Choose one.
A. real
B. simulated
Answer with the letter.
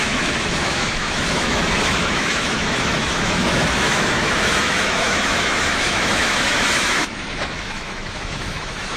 B